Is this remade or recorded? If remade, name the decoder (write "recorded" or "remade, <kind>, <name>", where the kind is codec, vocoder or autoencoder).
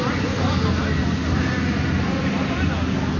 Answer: recorded